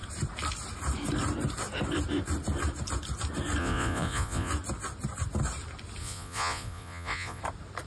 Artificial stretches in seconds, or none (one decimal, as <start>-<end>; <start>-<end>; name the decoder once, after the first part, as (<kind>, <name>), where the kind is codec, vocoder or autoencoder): 3.6-4.5 (vocoder, Vocos); 6.0-7.4